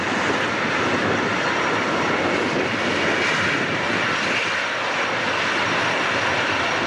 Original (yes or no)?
yes